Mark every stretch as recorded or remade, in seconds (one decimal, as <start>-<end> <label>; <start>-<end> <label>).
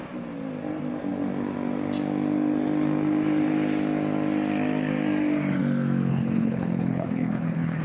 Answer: 0.0-6.1 recorded; 6.1-7.8 remade